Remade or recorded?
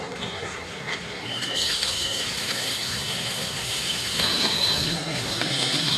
remade